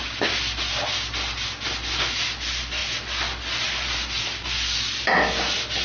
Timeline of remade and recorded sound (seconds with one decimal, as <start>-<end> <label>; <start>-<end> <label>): 0.0-5.8 recorded